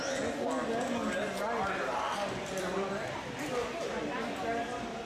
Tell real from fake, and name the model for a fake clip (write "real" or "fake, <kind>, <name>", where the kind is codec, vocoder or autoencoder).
real